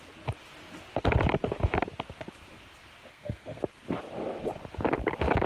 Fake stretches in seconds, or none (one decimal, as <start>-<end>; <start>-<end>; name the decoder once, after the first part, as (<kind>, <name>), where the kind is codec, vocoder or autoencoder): 3.1-3.6 (codec, SNAC)